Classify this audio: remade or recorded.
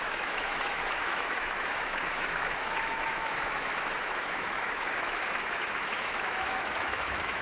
remade